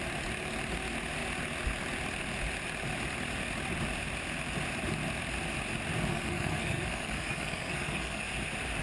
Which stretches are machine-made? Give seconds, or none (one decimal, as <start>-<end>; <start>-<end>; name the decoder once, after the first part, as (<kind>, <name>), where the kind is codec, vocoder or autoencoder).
6.1-8.2 (codec, SNAC)